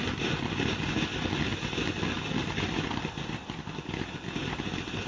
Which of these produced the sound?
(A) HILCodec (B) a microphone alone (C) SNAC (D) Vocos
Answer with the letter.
B